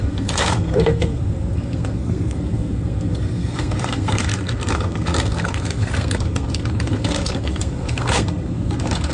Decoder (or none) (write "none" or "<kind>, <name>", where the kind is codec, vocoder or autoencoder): codec, SNAC